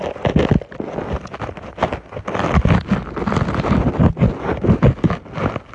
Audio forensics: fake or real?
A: real